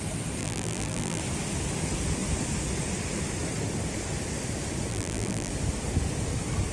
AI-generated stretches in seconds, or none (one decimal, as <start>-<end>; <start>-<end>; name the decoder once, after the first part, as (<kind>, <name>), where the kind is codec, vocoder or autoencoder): 0.4-1.2 (vocoder, BigVGAN v2); 4.9-5.5